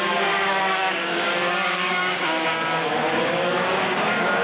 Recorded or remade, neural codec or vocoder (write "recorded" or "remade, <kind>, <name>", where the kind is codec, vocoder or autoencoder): remade, codec, DAC